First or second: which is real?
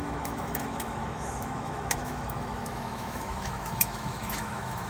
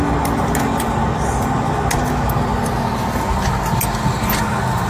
second